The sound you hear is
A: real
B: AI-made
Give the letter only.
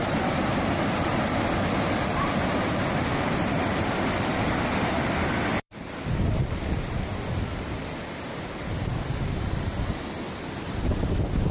B